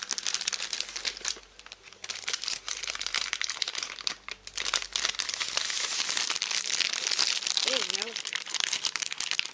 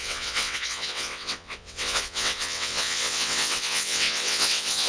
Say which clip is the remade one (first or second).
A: second